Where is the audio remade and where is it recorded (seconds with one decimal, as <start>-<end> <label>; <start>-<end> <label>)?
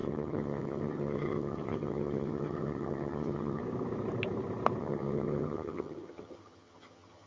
0.0-3.6 remade; 3.6-4.8 recorded; 4.8-7.3 remade